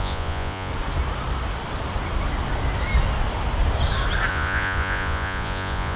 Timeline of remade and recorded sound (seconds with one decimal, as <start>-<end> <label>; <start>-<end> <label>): 0.0-0.7 remade; 0.7-4.3 recorded; 4.3-6.0 remade